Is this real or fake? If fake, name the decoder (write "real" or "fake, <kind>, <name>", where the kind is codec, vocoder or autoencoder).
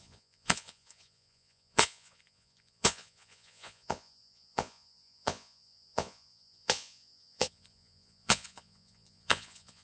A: fake, vocoder, Vocos